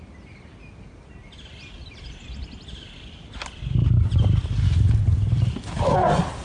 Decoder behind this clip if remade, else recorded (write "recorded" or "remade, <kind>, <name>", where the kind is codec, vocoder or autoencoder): recorded